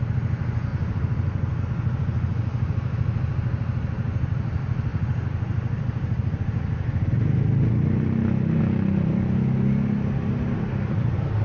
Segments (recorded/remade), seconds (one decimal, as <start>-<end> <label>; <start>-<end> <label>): 0.0-0.7 recorded; 0.7-1.6 remade; 1.6-11.4 recorded